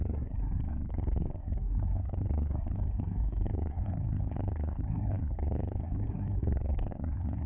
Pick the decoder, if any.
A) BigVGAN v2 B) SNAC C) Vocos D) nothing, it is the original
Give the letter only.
B